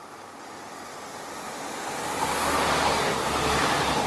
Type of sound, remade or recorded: recorded